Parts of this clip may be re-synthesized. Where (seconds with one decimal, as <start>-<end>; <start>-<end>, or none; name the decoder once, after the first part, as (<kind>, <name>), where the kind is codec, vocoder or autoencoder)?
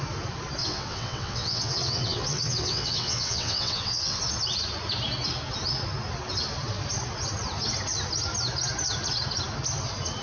0.6-4.2 (vocoder, WaveNeXt)